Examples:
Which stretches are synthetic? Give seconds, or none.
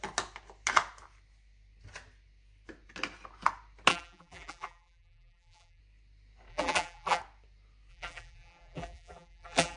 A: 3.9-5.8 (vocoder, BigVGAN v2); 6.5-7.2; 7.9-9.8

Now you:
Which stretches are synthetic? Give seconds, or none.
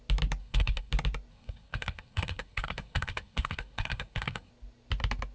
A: 0.4-0.9 (codec, SNAC); 1.3-4.5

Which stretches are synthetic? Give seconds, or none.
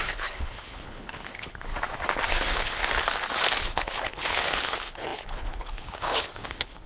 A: 0.0-1.7 (codec, HILCodec); 2.3-2.8; 3.6-6.9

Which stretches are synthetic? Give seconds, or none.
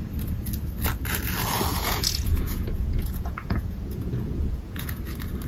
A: 1.7-5.0 (vocoder, Vocos)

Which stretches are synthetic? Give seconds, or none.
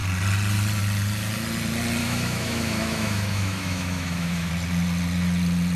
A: 2.0-4.5 (autoencoder, DAC-VAE)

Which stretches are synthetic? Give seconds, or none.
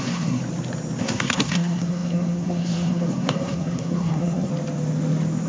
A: 0.0-0.4 (codec, SNAC); 1.0-4.5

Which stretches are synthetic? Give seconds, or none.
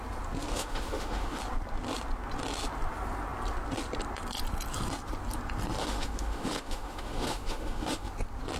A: 0.5-1.4 (autoencoder, DAC-VAE); 5.8-8.1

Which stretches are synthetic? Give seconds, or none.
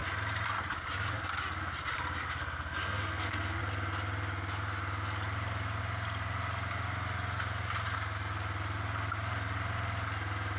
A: 2.2-3.6 (codec, SNAC)